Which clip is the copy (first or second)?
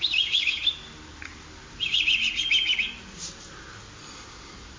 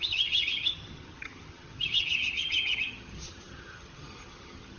second